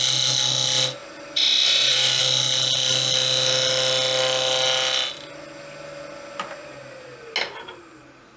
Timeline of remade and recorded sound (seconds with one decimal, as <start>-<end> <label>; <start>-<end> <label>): 0.0-1.0 recorded; 1.0-2.2 remade; 2.2-8.4 recorded